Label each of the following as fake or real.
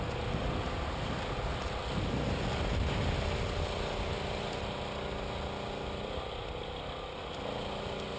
real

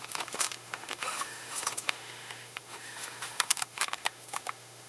fake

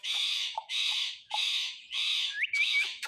fake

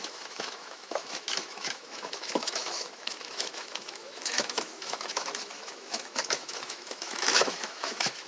fake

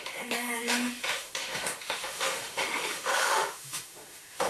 fake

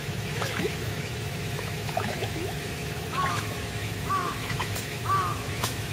fake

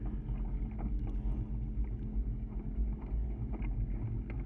real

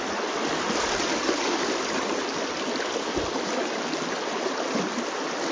real